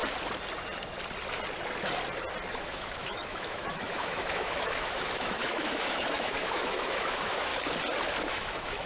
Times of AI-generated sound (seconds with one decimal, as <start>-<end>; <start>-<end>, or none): 2.5-7.5; 8.3-8.9

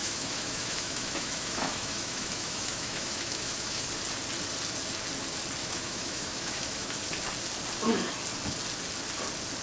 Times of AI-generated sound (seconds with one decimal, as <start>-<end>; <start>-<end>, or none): 0.0-3.9; 5.6-7.0

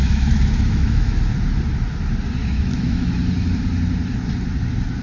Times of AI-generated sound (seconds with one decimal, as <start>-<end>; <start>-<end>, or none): 0.0-1.2; 2.4-3.1

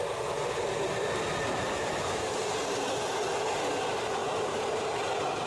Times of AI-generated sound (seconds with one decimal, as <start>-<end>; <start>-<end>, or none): 1.9-2.4

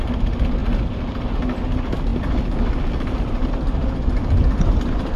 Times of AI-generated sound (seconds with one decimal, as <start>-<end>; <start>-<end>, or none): none

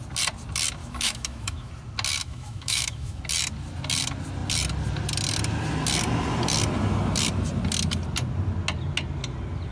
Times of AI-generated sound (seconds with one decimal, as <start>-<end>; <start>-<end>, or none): 0.8-1.7; 2.2-3.2

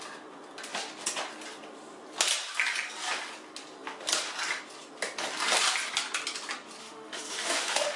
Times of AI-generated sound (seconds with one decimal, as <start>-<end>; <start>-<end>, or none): 6.8-8.0

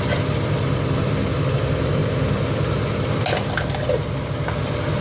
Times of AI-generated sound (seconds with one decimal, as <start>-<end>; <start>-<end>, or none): none